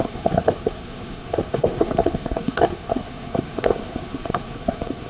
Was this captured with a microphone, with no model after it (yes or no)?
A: no